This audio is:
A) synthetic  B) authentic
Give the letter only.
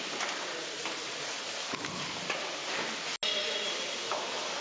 B